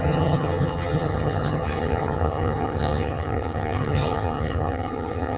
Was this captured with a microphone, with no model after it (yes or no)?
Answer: no